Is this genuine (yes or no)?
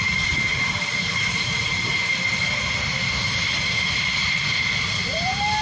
no